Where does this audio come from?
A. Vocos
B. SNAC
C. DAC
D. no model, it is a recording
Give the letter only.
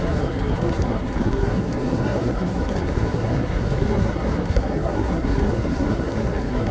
B